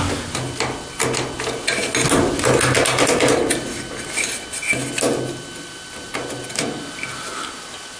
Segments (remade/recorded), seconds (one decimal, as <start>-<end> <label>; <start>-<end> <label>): 0.0-8.0 recorded

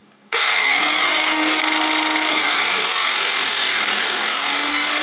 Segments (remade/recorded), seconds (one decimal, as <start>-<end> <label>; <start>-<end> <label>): 0.0-1.6 remade; 1.6-2.3 recorded; 2.3-5.0 remade

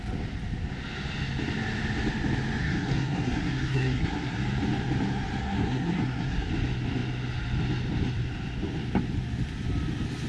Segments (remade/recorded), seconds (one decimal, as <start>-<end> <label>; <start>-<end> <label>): 0.0-2.6 recorded; 2.6-4.4 remade; 4.4-5.4 recorded; 5.4-6.5 remade; 6.5-10.3 recorded